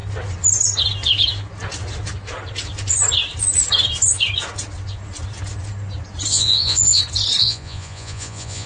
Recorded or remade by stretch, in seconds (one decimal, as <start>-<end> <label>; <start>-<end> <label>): 0.0-6.3 recorded; 6.3-7.0 remade; 7.0-7.4 recorded; 7.4-8.7 remade